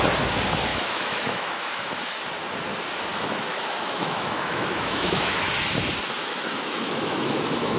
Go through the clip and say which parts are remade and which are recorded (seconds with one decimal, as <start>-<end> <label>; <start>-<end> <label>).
0.0-0.7 recorded; 0.7-2.2 remade; 2.2-3.1 recorded; 3.1-5.5 remade; 5.5-6.2 recorded; 6.2-7.8 remade